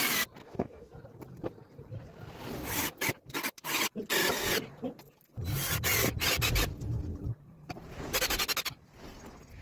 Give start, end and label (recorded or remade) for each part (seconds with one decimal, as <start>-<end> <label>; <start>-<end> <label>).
0.0-0.4 recorded; 0.4-0.9 remade; 0.9-9.6 recorded